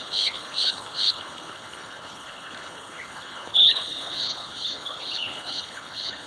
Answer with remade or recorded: remade